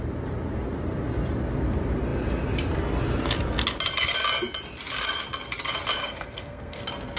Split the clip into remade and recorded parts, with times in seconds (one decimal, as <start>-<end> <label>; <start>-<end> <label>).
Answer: 0.0-6.0 recorded; 6.0-6.8 remade; 6.8-7.2 recorded